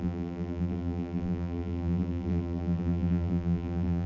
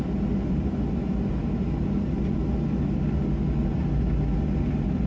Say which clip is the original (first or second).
second